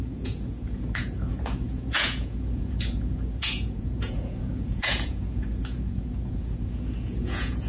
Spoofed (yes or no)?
yes